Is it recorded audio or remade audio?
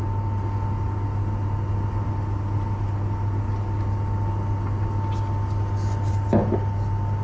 recorded